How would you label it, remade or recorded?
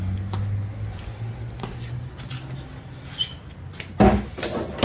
recorded